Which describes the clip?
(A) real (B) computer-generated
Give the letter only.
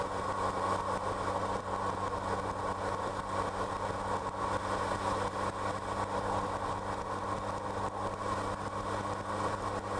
A